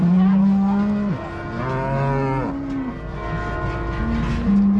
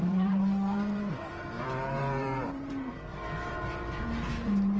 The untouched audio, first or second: first